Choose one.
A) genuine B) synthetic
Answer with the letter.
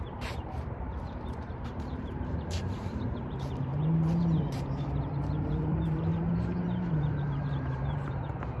B